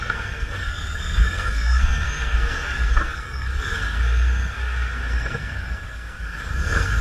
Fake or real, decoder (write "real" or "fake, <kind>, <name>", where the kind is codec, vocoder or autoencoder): fake, codec, SNAC